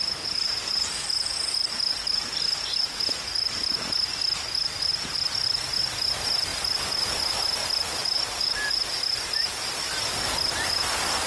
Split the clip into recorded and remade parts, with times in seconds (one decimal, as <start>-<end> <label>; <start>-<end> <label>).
0.0-11.3 recorded

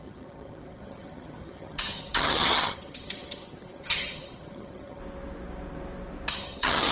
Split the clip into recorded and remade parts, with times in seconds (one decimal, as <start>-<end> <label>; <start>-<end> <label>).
0.0-5.0 remade; 5.0-6.3 recorded; 6.3-6.9 remade

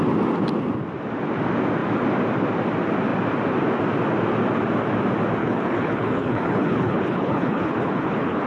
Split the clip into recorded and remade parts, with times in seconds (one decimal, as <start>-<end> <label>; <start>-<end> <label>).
0.0-5.4 recorded; 5.4-8.5 remade

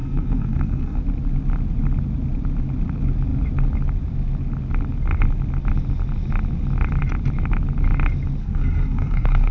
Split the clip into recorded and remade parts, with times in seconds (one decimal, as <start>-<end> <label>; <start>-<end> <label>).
0.0-1.0 remade; 1.0-8.4 recorded; 8.4-9.5 remade